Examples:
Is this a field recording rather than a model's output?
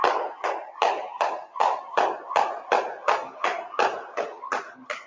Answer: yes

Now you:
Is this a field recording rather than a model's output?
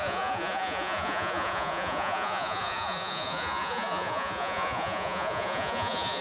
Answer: no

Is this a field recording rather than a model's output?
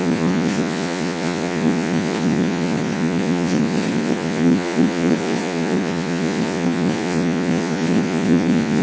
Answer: no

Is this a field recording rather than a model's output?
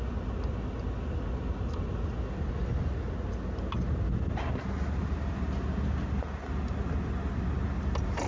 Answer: yes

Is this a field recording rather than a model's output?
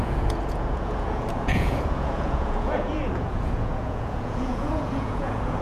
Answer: no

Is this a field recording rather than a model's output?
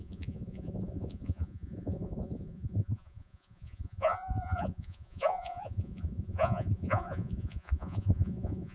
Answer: no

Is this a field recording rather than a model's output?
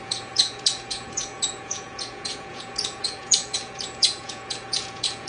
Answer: no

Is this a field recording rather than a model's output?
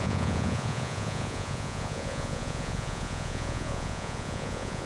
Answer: no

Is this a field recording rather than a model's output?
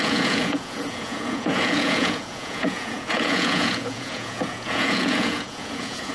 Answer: no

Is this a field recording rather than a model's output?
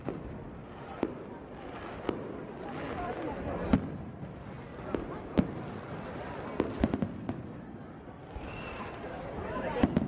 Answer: yes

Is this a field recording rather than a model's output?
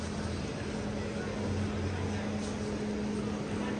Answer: yes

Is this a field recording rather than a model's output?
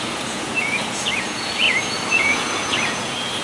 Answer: no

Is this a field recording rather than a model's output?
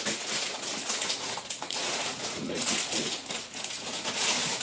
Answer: no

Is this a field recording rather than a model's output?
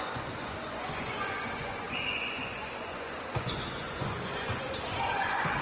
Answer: no